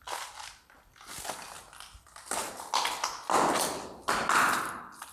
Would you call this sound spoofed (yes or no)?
no